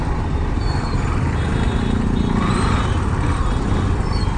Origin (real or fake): real